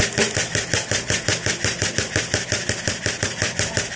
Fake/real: real